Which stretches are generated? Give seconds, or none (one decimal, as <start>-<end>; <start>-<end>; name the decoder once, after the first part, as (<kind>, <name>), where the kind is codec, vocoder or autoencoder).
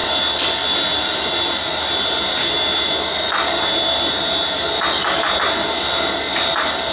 none